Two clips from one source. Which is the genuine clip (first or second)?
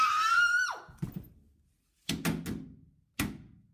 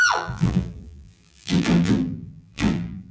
first